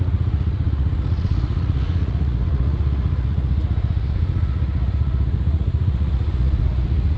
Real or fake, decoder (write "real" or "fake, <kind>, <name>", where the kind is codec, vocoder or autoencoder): fake, vocoder, Vocos